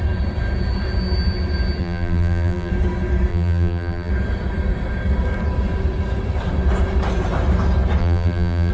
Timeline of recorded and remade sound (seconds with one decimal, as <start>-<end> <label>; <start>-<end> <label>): 0.0-1.8 recorded; 1.8-2.7 remade; 2.7-3.3 recorded; 3.3-4.1 remade; 4.1-8.0 recorded; 8.0-8.7 remade